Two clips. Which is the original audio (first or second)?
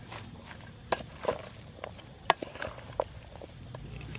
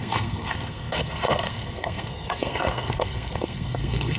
first